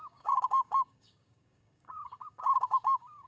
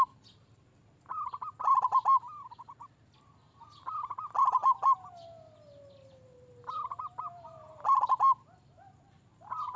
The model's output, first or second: first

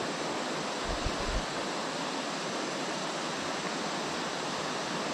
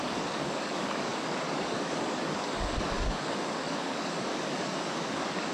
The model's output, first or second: second